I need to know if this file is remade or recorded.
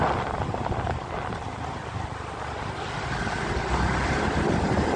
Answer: recorded